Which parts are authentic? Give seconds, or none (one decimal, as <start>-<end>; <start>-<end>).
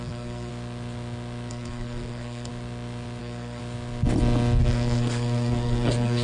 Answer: 0.5-1.5; 2.5-3.2; 3.6-4.6